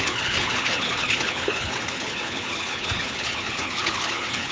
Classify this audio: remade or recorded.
remade